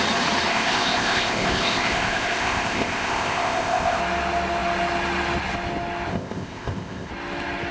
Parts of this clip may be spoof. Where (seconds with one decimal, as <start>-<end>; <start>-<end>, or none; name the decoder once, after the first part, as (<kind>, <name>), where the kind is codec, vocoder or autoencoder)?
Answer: 0.5-4.0 (codec, ZipCodec); 6.1-7.1